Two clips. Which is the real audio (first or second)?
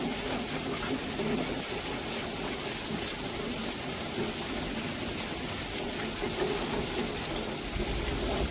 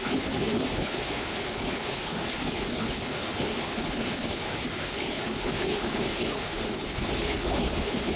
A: first